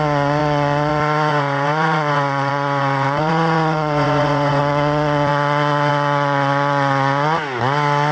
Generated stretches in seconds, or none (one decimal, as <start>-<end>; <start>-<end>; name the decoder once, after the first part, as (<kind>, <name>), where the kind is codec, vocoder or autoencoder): 1.3-4.6 (vocoder, Vocos)